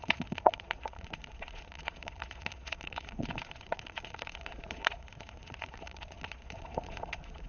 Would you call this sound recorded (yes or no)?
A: no